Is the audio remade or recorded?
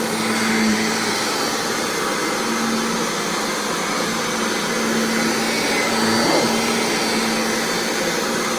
recorded